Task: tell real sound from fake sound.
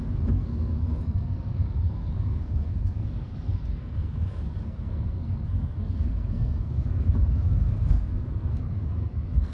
fake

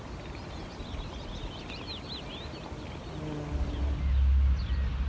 real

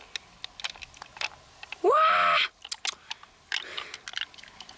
real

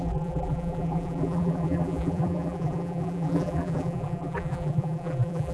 fake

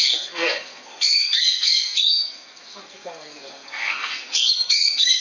fake